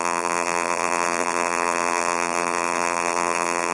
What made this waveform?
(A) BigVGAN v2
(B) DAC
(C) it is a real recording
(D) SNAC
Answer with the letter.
A